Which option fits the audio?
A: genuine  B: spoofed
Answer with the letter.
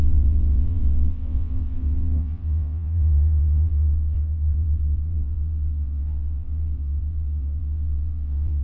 B